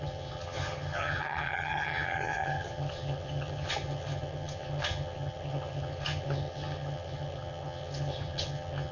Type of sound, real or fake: fake